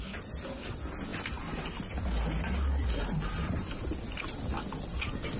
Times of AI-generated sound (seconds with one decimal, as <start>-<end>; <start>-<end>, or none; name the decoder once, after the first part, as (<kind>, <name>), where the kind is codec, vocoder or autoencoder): none